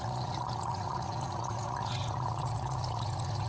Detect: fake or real fake